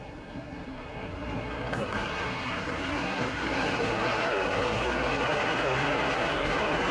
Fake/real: fake